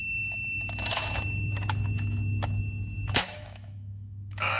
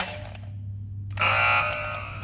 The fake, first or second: first